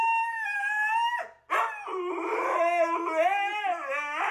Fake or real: real